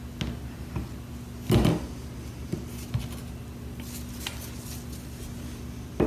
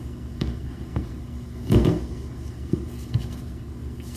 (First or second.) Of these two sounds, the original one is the first